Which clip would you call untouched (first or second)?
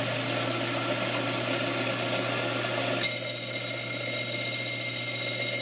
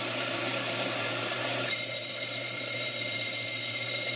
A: first